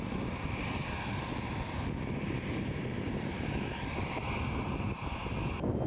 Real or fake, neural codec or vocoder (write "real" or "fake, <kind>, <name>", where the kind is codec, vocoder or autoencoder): real